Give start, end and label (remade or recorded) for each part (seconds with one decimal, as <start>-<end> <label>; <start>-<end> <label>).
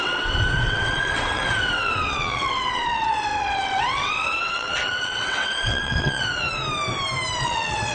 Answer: 0.0-6.5 remade; 6.5-7.4 recorded; 7.4-7.9 remade